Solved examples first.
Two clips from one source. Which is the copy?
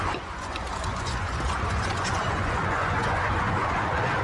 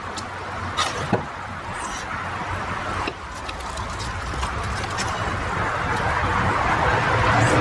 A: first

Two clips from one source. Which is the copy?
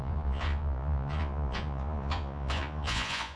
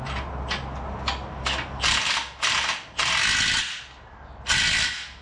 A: first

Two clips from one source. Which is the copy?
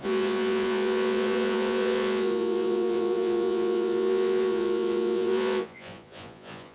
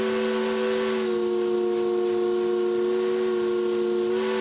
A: first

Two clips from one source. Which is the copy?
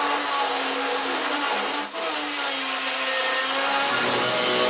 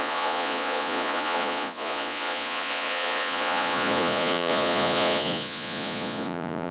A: second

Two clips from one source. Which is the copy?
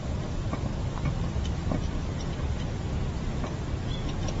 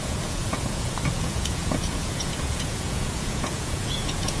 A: second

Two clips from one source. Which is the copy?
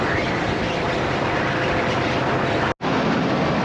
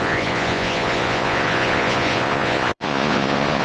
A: second